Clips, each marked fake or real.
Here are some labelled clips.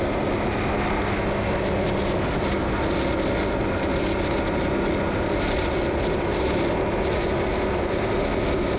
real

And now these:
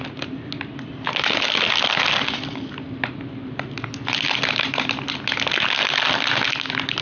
real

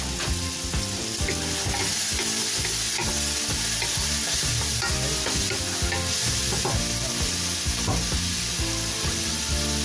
real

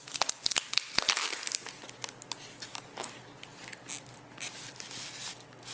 real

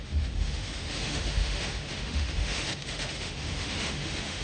fake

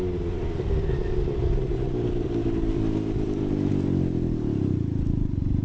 real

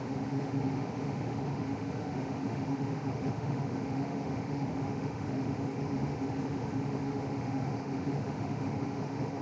fake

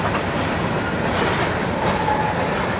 real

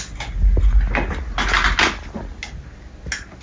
real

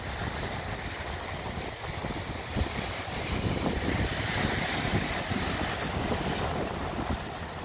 real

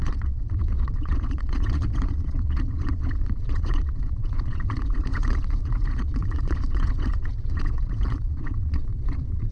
fake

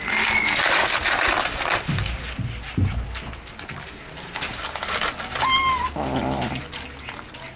real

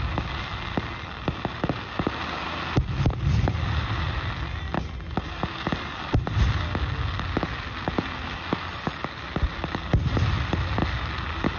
real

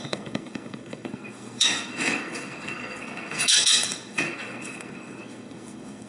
fake